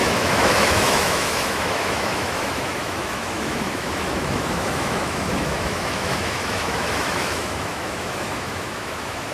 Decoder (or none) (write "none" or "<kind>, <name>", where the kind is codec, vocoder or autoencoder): autoencoder, DAC-VAE